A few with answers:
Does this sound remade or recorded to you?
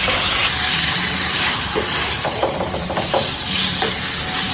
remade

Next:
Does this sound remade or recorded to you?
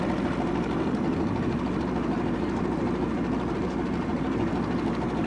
recorded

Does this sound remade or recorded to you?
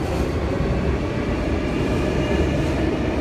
recorded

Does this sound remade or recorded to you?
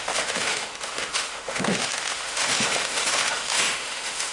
remade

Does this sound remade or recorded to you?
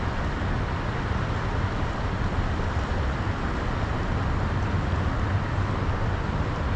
recorded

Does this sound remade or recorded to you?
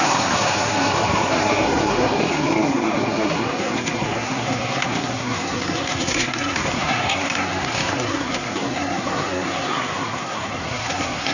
remade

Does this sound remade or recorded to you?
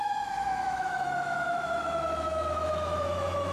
remade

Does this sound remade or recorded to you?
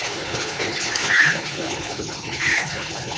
remade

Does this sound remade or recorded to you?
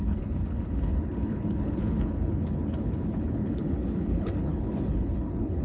remade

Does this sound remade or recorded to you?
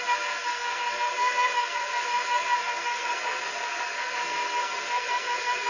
remade